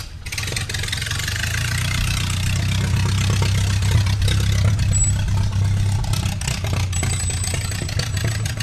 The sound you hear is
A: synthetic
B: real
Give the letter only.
B